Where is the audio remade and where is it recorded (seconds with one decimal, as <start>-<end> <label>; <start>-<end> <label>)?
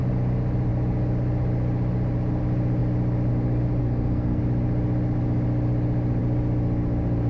0.0-3.8 recorded; 3.8-4.4 remade; 4.4-7.3 recorded